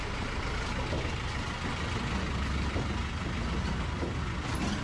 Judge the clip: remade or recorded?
recorded